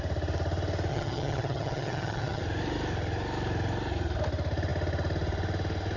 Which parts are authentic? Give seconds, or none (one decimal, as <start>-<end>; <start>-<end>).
0.0-0.9; 2.4-6.0